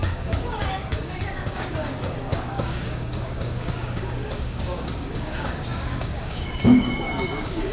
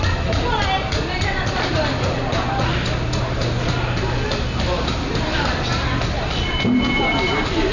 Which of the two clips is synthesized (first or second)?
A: first